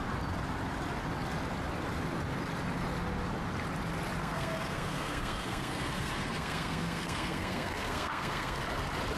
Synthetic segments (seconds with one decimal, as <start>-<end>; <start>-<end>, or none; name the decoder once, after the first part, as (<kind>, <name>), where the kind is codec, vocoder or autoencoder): 4.2-8.6 (codec, SNAC)